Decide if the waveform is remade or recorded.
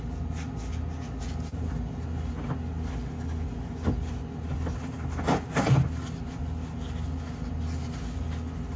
recorded